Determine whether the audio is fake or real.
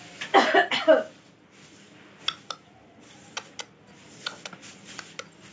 real